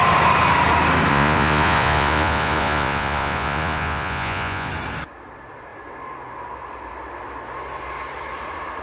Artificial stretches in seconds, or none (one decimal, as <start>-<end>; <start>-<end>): 1.1-4.7